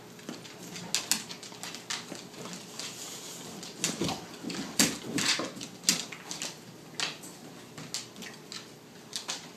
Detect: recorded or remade recorded